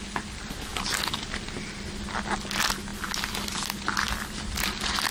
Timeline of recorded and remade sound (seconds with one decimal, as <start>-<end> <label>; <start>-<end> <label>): 0.0-5.1 recorded